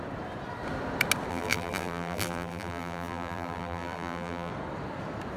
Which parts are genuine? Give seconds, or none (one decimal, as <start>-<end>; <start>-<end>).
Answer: 0.0-1.3; 4.5-5.4